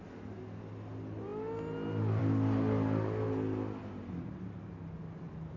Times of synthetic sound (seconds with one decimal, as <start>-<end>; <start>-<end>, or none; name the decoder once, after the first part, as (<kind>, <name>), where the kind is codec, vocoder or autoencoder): none